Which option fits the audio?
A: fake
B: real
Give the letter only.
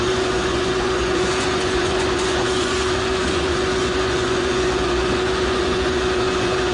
A